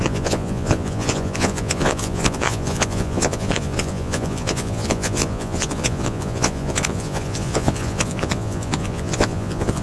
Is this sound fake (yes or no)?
yes